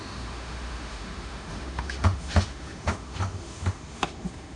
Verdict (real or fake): fake